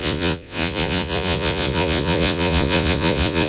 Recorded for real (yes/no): no